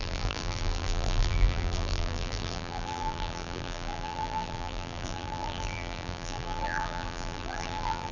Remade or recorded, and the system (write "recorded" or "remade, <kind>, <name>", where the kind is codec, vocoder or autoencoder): remade, vocoder, BigVGAN v2